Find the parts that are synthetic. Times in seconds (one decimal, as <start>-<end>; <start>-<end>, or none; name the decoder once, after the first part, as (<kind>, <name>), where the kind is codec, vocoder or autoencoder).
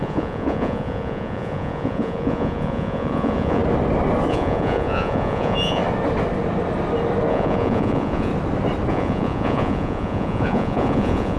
0.0-3.6 (vocoder, Vocos); 4.3-5.8; 7.3-8.3; 8.9-11.4